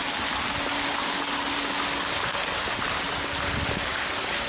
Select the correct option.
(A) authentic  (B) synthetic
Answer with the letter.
A